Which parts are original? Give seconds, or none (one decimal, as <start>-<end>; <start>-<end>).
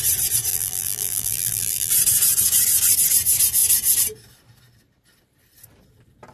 0.0-0.5; 1.9-6.3